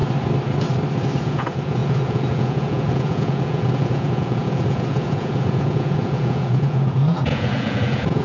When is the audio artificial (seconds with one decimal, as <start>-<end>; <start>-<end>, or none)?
1.2-8.2